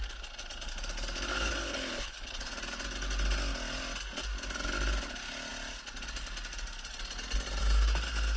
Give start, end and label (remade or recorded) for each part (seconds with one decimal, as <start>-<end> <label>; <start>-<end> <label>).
0.0-1.3 recorded; 1.3-2.6 remade; 2.6-8.4 recorded